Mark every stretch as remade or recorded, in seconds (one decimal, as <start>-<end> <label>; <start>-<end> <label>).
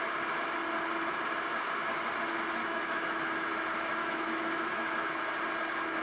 0.0-2.6 recorded; 2.6-3.5 remade; 3.5-4.0 recorded; 4.0-5.1 remade; 5.1-6.0 recorded